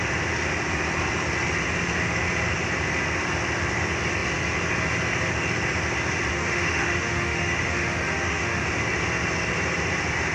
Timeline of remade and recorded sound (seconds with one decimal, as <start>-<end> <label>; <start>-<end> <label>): 0.0-6.3 recorded; 6.3-8.6 remade; 8.6-10.3 recorded